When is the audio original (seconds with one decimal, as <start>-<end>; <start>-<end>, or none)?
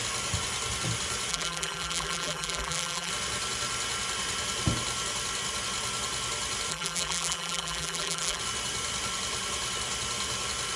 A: 0.0-1.3; 3.1-6.7; 8.4-10.8